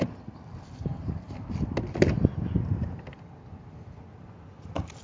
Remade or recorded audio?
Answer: recorded